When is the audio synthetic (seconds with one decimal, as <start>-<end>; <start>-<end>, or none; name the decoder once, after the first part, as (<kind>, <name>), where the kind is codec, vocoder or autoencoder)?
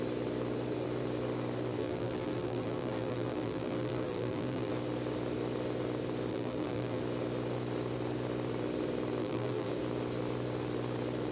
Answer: 1.8-4.7 (vocoder, BigVGAN v2); 6.3-7.0; 9.2-9.7